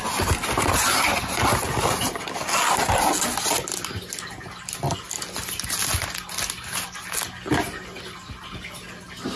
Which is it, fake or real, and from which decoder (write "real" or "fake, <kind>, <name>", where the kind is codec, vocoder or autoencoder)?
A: real